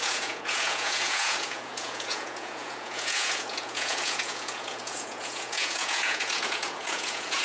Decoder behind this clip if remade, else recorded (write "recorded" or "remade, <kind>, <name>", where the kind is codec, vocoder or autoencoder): remade, vocoder, Vocos